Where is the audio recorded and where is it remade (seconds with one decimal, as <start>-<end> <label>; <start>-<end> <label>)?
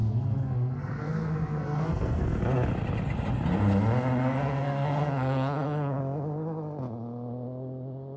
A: 0.0-2.4 remade; 2.4-4.2 recorded; 4.2-6.0 remade; 6.0-8.2 recorded